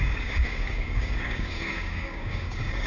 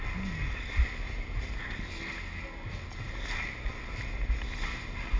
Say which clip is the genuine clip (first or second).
second